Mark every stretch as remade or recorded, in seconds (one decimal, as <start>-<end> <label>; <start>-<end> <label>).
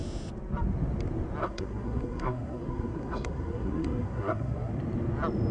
0.0-1.4 recorded; 1.4-4.7 remade; 4.7-5.5 recorded